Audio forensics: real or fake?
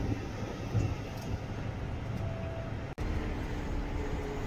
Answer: real